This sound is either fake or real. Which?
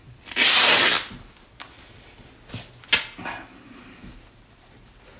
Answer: real